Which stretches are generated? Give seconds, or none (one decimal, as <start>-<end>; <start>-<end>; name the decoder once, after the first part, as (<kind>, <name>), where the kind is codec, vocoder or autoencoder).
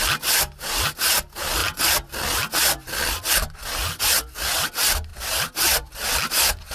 none